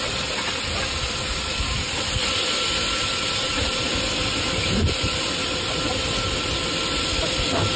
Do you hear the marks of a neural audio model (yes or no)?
no